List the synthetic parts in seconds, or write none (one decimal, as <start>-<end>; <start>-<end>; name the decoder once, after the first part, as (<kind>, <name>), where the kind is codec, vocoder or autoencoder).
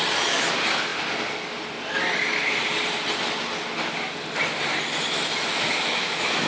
5.5-6.5 (autoencoder, DAC-VAE)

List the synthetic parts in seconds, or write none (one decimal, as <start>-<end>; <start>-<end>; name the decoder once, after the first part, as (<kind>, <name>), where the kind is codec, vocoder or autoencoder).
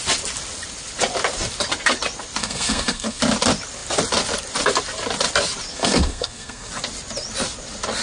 2.4-3.2 (codec, SNAC); 5.7-6.7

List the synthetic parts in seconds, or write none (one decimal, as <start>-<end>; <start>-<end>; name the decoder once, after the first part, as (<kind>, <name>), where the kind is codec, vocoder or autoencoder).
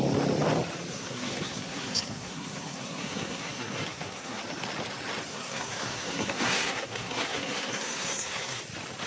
0.9-4.4 (codec, SNAC); 5.3-8.6